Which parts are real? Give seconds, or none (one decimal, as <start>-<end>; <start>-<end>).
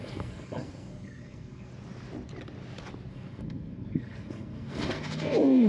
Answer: 1.7-3.1